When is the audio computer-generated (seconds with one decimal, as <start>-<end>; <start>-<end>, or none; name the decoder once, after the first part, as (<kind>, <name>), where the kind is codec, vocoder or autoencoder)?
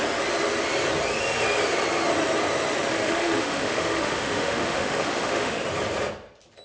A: 2.9-5.6 (autoencoder, DAC-VAE)